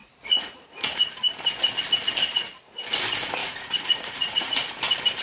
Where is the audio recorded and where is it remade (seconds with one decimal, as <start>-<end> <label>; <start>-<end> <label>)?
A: 0.0-1.1 remade; 1.1-2.3 recorded; 2.3-2.8 remade; 2.8-3.4 recorded; 3.4-4.7 remade; 4.7-5.2 recorded